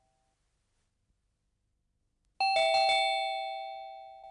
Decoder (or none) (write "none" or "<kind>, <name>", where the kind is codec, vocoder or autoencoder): none